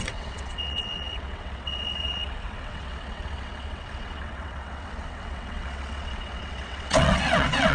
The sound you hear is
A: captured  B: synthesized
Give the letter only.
B